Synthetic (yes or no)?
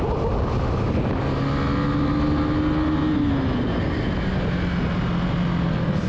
no